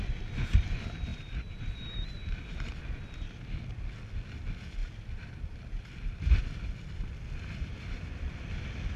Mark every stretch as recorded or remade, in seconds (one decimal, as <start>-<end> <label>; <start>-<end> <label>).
0.0-1.1 recorded; 1.1-2.8 remade; 2.8-9.0 recorded